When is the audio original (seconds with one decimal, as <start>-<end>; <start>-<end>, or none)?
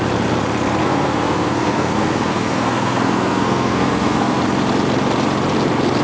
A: 0.0-0.8; 4.4-6.0